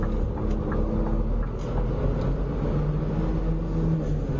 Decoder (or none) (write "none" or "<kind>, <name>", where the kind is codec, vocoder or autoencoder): none